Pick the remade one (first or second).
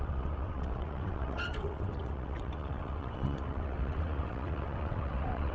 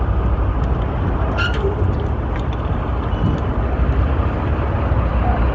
first